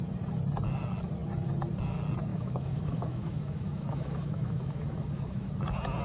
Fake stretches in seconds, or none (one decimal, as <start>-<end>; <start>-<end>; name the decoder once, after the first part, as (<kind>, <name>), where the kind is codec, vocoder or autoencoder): 2.3-5.5 (autoencoder, DAC-VAE)